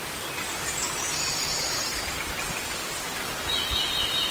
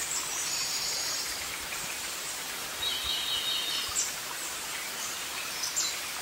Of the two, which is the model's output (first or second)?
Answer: second